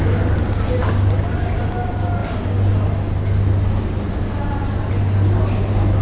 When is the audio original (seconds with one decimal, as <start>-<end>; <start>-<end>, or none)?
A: 0.0-6.0